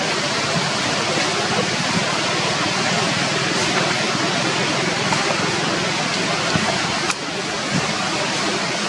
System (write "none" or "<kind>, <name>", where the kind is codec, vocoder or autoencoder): none